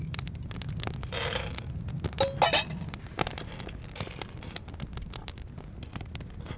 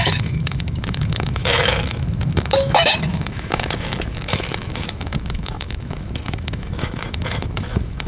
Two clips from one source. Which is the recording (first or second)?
first